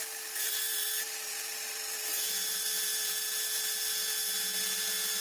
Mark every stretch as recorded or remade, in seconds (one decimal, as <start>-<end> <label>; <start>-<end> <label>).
0.0-3.1 remade; 3.1-5.2 recorded